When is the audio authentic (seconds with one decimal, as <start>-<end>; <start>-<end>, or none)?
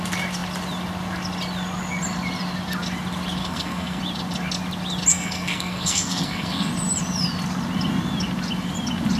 0.0-3.4; 4.0-5.1; 6.7-9.2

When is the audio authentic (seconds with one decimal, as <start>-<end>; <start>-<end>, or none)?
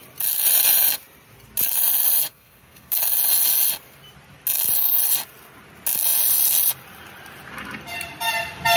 0.0-2.3; 3.0-8.8